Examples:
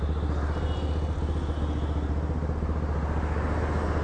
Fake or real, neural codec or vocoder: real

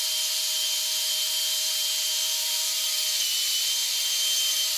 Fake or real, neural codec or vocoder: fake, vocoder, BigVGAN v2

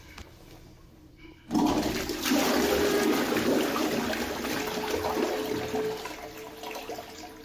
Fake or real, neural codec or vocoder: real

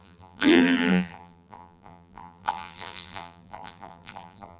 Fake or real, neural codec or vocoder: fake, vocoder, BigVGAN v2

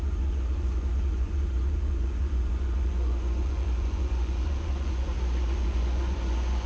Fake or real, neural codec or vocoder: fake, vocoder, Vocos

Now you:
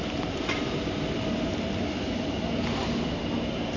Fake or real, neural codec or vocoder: real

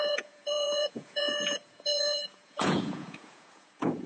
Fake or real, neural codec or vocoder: fake, vocoder, Vocos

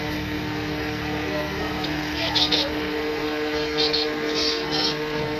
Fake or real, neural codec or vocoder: fake, codec, SNAC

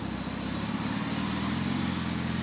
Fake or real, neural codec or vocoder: fake, vocoder, BigVGAN v2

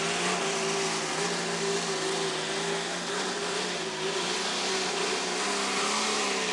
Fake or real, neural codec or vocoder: real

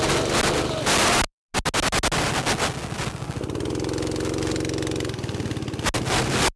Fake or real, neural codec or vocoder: real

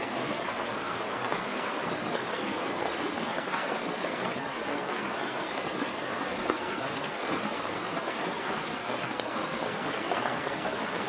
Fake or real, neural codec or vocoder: fake, codec, SNAC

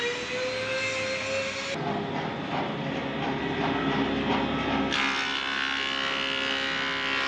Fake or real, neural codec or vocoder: real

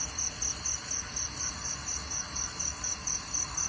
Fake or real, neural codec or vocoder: real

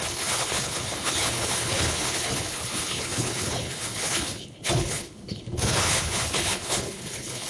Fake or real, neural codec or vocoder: fake, codec, HILCodec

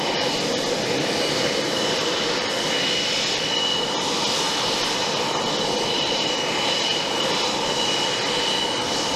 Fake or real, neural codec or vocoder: real